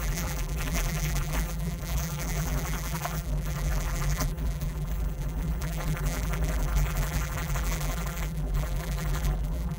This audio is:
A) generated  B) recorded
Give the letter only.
A